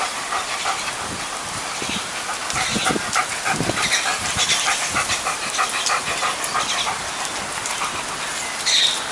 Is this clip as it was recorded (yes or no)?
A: yes